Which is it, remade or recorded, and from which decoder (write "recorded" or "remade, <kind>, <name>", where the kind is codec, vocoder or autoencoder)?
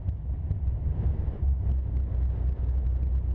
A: recorded